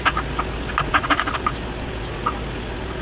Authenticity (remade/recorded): recorded